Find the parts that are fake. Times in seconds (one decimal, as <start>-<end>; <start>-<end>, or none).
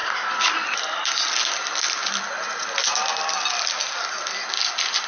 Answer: none